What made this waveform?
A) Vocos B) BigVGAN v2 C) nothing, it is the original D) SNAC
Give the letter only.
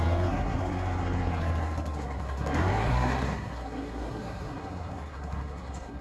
D